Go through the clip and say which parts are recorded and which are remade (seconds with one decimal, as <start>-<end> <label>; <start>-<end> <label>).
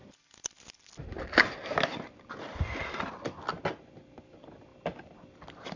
0.0-5.8 recorded